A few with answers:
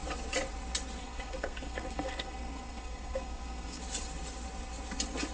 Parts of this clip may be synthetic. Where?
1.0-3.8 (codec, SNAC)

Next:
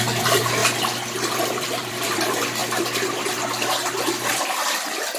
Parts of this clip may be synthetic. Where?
0.0-0.6 (vocoder, BigVGAN v2); 1.4-2.6; 4.3-5.2

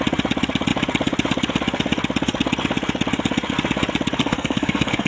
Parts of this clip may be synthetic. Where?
4.2-5.1 (codec, SNAC)

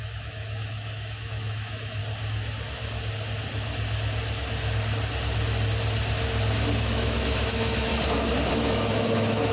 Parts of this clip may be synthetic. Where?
0.0-2.0 (autoencoder, DAC-VAE); 6.8-7.9; 8.5-9.5

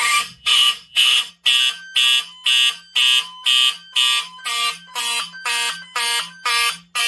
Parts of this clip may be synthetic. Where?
0.0-1.3 (autoencoder, DAC-VAE)

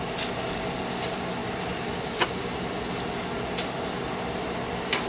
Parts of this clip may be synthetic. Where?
none

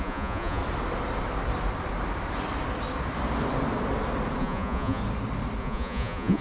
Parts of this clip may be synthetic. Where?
0.0-0.6 (vocoder, Vocos); 4.4-5.0; 5.6-6.4

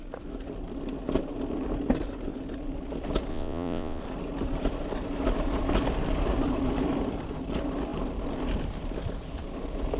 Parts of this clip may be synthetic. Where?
3.3-4.0 (vocoder, Vocos)